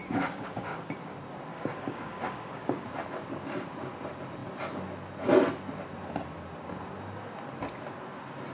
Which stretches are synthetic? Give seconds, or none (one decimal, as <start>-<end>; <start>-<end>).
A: 0.0-1.0; 1.5-2.9